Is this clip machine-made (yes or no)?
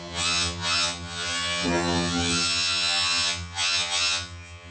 yes